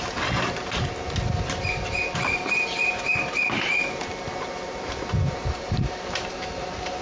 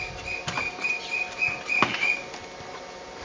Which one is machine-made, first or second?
first